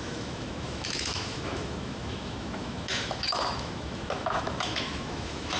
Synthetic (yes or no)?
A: yes